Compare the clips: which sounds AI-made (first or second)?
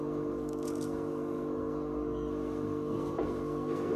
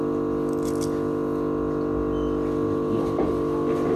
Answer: first